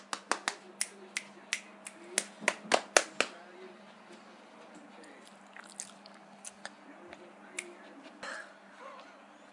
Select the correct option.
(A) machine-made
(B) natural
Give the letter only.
B